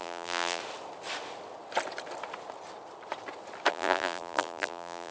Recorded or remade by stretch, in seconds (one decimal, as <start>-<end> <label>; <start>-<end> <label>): 0.0-0.6 remade; 0.6-3.7 recorded; 3.7-5.1 remade